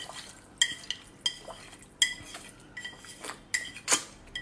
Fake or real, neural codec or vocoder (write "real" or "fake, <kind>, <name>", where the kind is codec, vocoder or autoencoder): real